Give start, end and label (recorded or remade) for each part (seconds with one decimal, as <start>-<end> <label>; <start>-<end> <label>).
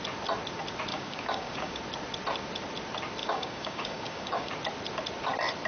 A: 0.0-0.9 recorded; 0.9-1.8 remade; 1.8-3.2 recorded; 3.2-4.5 remade; 4.5-5.7 recorded